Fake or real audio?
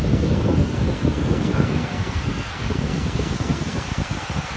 fake